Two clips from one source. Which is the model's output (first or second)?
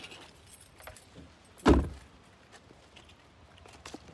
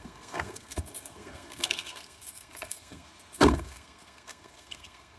second